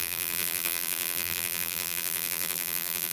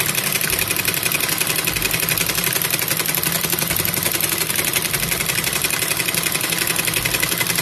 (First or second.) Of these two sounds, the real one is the second